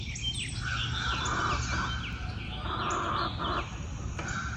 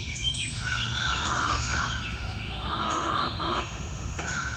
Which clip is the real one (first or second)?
first